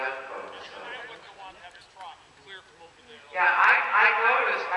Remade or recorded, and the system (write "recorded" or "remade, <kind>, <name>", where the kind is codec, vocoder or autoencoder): recorded